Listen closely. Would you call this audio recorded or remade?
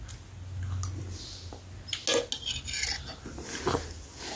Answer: recorded